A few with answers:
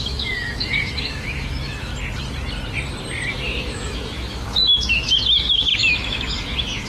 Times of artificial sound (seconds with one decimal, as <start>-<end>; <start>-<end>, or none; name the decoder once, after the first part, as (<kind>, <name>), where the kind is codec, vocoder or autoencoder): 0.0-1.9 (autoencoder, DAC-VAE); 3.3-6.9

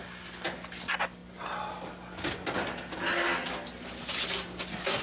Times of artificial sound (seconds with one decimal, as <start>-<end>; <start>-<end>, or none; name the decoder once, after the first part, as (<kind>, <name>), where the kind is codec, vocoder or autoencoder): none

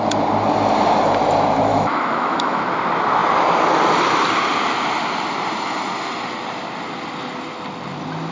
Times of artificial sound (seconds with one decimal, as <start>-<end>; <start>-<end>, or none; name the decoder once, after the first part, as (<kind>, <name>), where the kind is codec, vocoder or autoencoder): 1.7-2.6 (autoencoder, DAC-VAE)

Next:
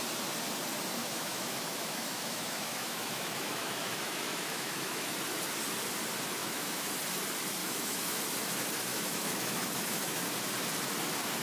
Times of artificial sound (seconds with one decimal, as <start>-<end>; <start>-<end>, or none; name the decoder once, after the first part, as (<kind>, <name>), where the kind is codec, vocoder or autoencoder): 1.0-5.1 (autoencoder, DAC-VAE); 6.4-6.9; 7.6-8.2; 8.9-10.2